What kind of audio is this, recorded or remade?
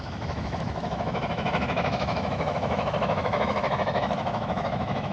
remade